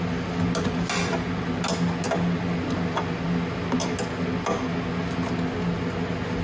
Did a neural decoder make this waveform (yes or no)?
no